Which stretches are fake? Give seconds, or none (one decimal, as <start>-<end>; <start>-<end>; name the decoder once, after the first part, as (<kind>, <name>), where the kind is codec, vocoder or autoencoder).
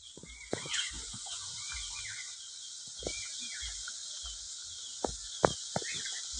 0.0-1.7 (vocoder, Vocos)